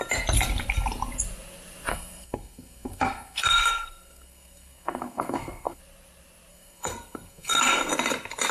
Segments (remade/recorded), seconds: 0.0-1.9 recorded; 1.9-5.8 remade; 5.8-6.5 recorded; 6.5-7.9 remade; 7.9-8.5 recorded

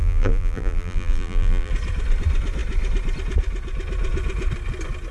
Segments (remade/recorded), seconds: 0.0-1.7 remade; 1.7-5.1 recorded

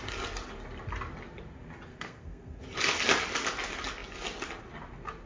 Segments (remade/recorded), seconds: 0.0-1.9 recorded; 1.9-2.6 remade; 2.6-5.3 recorded